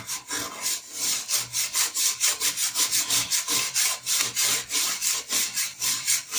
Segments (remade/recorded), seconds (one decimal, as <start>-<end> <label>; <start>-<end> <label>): 0.0-2.6 recorded; 2.6-3.8 remade; 3.8-5.7 recorded; 5.7-6.4 remade